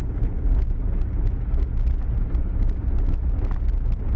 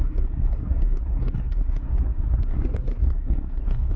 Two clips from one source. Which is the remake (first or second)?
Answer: second